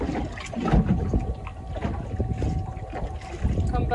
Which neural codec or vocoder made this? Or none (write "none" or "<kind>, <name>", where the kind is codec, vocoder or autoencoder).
none